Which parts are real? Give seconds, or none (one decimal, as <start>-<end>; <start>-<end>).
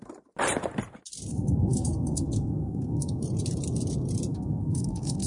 0.0-1.3; 3.2-4.3